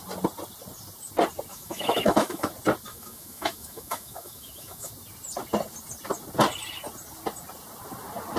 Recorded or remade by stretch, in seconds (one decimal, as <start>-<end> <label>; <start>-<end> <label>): 0.0-1.5 recorded; 1.5-2.5 remade; 2.5-2.9 recorded; 2.9-4.9 remade; 4.9-8.4 recorded